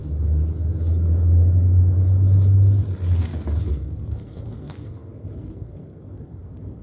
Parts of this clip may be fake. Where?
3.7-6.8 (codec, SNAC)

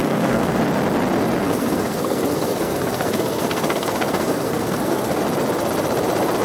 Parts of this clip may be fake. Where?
0.0-0.6 (codec, SNAC); 1.4-5.2

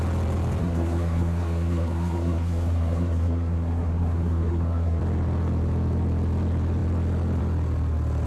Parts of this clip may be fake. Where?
0.6-5.0 (codec, SNAC)

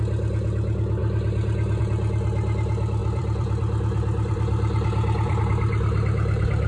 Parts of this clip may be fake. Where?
3.0-5.4 (vocoder, BigVGAN v2)